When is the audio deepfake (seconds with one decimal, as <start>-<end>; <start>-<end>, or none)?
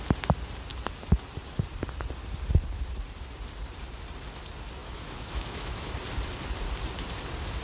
4.8-5.9